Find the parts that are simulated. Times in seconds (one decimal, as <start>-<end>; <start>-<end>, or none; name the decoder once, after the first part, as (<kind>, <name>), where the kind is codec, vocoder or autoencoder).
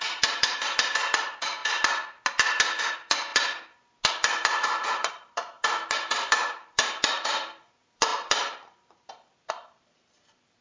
0.0-1.6 (vocoder, BigVGAN v2); 2.9-3.3; 4.1-10.6